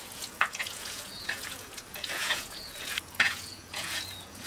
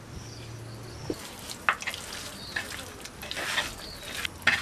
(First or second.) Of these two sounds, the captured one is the second